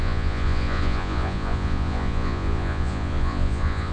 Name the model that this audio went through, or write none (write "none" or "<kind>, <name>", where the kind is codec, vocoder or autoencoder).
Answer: vocoder, Vocos